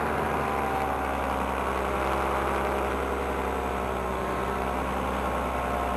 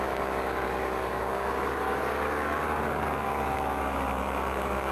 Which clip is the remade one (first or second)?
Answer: second